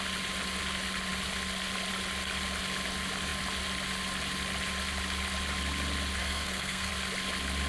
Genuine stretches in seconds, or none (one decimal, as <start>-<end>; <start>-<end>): 0.0-6.2; 6.9-7.7